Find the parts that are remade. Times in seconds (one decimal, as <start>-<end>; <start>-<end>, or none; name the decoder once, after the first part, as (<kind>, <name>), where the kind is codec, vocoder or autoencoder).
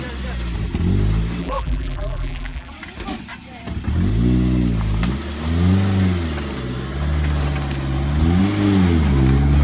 1.4-2.7 (vocoder, BigVGAN v2)